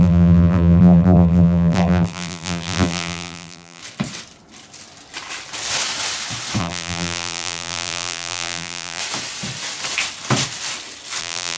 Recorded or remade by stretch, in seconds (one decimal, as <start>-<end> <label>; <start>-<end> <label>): 0.0-3.8 remade; 3.8-6.6 recorded; 6.6-9.0 remade; 9.0-11.2 recorded; 11.2-11.6 remade